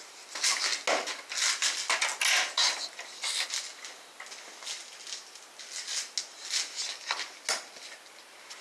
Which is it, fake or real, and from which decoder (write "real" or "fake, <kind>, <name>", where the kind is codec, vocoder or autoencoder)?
real